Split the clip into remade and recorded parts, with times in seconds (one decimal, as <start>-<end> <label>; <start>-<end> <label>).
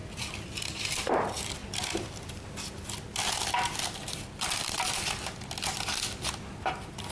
0.0-7.1 recorded